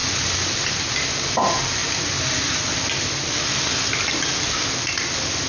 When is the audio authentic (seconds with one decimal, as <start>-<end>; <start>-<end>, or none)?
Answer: 0.0-5.5